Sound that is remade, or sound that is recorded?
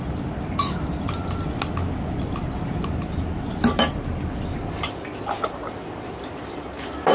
recorded